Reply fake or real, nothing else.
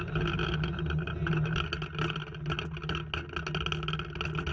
real